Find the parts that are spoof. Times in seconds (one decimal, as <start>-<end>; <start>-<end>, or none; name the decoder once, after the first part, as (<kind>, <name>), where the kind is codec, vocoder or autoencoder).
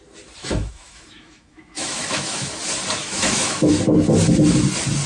0.4-2.5 (autoencoder, DAC-VAE); 3.0-3.7